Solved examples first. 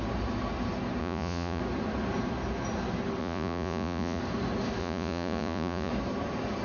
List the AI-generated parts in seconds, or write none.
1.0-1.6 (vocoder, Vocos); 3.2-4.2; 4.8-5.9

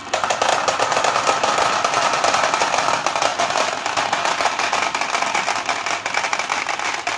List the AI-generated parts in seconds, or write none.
none